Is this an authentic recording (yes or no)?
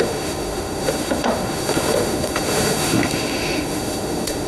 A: no